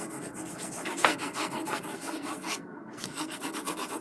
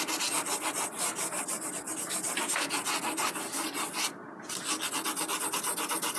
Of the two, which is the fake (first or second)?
first